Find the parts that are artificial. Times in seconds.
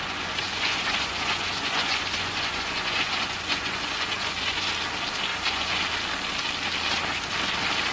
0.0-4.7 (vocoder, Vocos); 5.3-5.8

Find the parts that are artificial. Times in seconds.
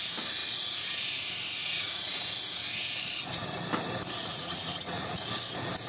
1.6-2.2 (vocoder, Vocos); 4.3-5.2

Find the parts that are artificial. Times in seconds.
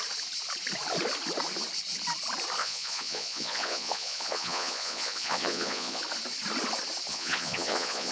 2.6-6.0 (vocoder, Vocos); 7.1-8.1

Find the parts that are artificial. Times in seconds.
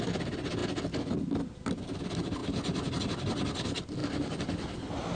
none